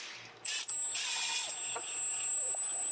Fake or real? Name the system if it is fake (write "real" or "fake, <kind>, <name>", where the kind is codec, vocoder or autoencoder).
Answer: real